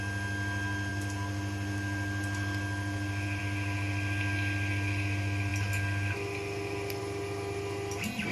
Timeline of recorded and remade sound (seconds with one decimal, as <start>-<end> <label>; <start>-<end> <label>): 0.0-0.9 recorded; 0.9-3.4 remade; 3.4-8.3 recorded